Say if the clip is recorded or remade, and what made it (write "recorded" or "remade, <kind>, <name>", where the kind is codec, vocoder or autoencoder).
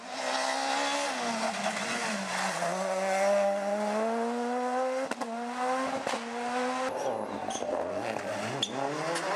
recorded